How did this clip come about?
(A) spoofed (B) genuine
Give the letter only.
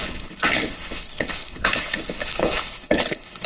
A